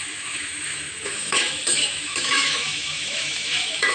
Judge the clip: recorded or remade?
remade